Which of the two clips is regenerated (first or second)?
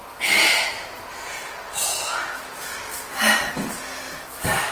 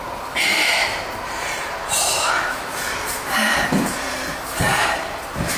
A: second